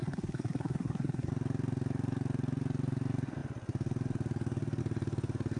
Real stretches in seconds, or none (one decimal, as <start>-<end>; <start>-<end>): 1.3-5.6